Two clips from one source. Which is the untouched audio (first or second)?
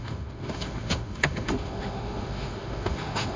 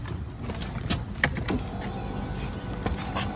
second